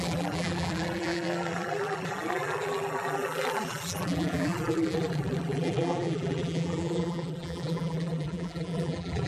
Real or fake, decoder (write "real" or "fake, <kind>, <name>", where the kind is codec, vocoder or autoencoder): fake, vocoder, BigVGAN v2